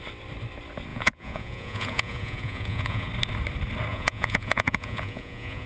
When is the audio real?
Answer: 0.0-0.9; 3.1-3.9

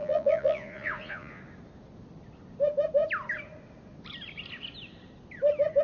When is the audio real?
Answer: 1.4-5.8